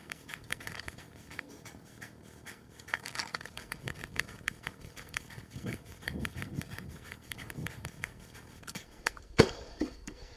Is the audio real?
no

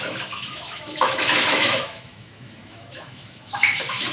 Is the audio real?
no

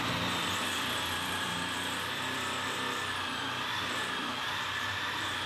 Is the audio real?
no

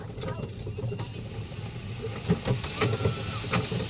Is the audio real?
yes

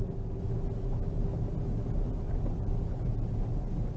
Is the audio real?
yes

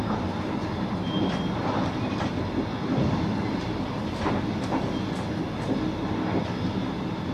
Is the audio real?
yes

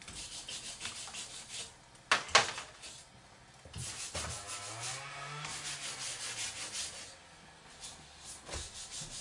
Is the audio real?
yes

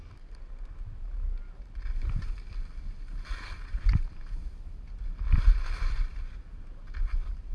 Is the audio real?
yes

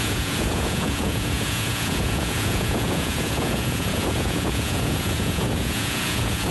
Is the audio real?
no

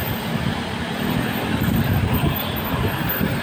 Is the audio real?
yes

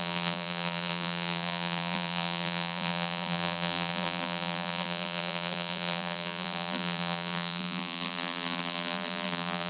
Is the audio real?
no